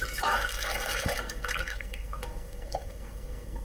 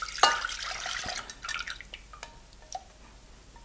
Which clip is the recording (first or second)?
second